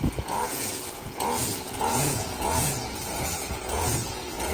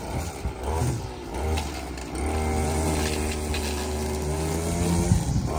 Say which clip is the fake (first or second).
first